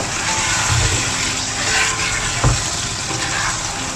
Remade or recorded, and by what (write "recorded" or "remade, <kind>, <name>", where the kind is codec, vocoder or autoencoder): recorded